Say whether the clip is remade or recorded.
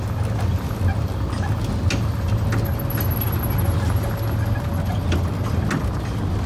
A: recorded